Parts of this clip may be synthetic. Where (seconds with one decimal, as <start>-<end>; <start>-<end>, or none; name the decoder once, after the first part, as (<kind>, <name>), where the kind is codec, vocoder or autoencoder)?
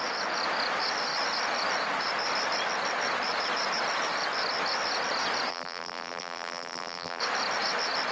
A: 5.5-7.2 (vocoder, BigVGAN v2)